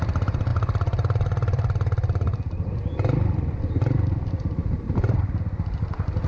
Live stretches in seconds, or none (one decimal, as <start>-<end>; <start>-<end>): 0.0-6.3